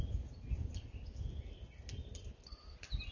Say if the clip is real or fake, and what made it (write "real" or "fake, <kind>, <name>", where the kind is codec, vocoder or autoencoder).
real